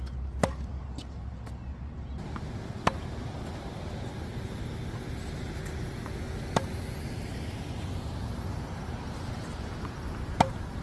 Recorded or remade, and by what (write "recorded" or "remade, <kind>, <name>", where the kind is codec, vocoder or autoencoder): recorded